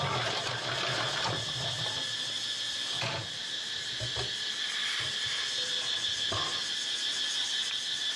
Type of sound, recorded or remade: recorded